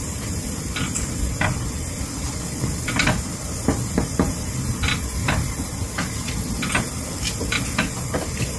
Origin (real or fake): real